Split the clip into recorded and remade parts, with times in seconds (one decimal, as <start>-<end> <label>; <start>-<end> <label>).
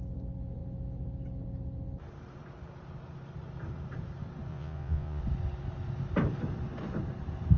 0.0-4.5 recorded; 4.5-5.2 remade; 5.2-7.6 recorded